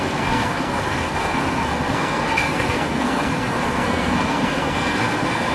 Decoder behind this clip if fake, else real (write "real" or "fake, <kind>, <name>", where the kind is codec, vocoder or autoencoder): fake, codec, SNAC